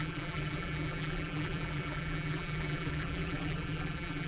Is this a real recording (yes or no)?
no